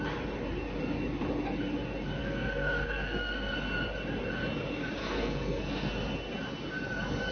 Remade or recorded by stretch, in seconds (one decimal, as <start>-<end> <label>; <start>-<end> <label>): 0.0-2.2 recorded; 2.2-3.5 remade; 3.5-5.0 recorded; 5.0-5.9 remade; 5.9-7.3 recorded